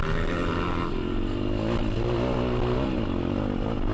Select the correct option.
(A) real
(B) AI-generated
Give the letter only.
A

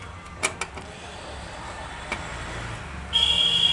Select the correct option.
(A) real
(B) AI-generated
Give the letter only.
A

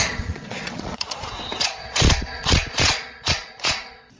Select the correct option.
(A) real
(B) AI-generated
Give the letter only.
B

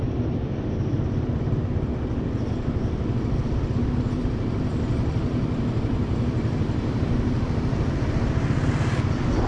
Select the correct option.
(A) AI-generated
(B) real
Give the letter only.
B